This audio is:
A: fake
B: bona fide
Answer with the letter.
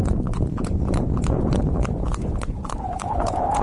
A